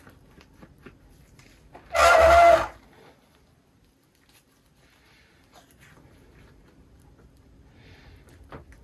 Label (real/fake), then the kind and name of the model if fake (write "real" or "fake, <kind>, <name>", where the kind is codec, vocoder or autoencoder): real